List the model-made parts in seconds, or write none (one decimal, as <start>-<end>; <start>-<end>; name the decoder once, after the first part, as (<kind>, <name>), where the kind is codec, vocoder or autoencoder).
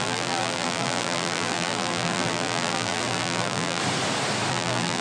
0.0-3.8 (vocoder, BigVGAN v2); 4.5-5.0